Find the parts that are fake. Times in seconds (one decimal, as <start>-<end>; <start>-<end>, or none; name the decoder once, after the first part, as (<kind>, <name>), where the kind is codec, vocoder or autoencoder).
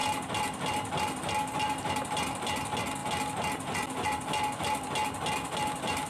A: none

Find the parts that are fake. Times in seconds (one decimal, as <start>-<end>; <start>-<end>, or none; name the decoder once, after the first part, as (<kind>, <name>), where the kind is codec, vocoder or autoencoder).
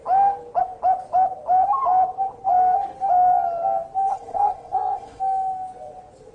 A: 4.1-5.2 (codec, SNAC)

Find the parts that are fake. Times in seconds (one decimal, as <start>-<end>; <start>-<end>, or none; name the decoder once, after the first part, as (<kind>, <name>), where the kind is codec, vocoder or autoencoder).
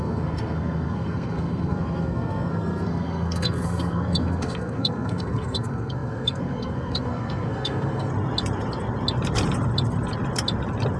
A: 0.0-8.1 (codec, SNAC)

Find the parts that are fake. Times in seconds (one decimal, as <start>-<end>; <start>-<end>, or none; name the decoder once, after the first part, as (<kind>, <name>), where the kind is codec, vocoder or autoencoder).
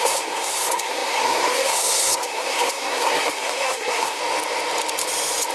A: 0.0-4.2 (codec, SNAC)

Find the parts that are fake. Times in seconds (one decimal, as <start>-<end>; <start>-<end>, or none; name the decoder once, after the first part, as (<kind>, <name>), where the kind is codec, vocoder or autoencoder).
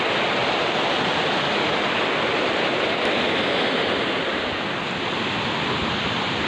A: none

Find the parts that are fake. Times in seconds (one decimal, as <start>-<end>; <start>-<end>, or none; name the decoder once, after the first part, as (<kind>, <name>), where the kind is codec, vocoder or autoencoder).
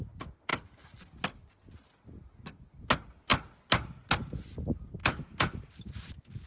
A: none